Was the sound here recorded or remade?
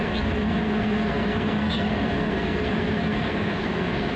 remade